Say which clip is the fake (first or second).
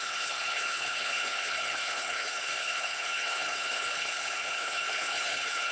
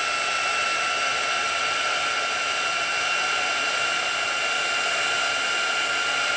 first